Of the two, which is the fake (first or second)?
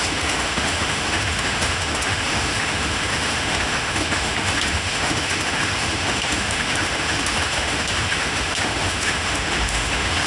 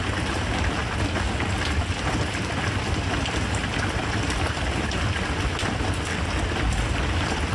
first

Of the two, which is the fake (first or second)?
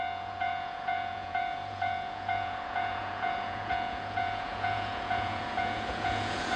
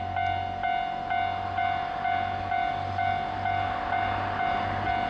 first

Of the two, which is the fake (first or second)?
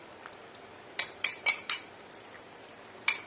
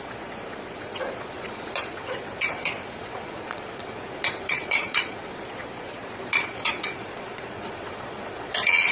second